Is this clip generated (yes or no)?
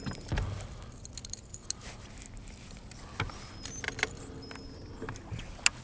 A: no